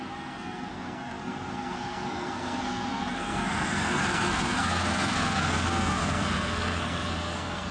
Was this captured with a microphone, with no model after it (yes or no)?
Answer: no